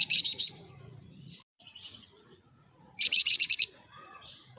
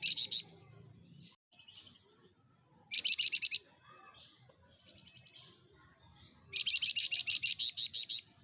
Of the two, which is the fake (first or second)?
first